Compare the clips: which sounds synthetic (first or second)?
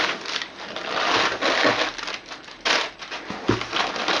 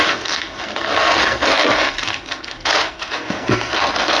second